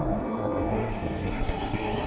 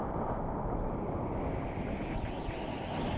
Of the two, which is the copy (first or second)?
first